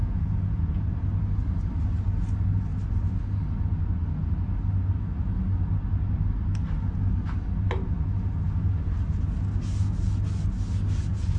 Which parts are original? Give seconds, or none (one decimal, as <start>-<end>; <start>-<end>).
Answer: 0.7-11.4